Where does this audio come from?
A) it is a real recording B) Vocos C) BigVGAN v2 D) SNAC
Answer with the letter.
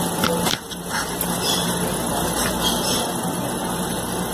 A